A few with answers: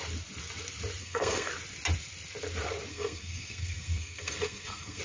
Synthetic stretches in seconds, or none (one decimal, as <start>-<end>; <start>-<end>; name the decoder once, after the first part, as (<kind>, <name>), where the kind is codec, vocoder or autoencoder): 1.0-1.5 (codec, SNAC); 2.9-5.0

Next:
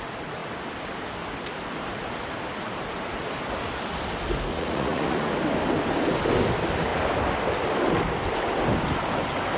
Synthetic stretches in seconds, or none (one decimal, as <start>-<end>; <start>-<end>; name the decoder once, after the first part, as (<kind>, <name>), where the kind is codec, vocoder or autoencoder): 4.5-5.3 (vocoder, Vocos)

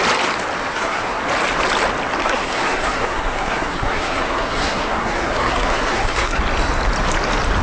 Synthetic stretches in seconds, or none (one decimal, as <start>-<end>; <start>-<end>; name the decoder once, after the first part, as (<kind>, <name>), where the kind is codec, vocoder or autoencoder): 0.7-1.2 (codec, SNAC); 2.2-6.4

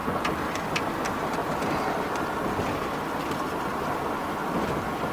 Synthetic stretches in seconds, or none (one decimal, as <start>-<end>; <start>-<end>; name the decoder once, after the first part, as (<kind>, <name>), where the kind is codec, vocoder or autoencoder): 0.0-5.1 (vocoder, BigVGAN v2)

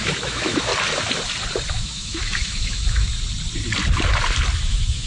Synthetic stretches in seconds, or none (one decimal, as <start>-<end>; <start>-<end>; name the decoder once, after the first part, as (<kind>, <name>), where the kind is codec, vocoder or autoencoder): 0.0-0.7 (autoencoder, DAC-VAE); 1.7-3.1; 4.6-5.1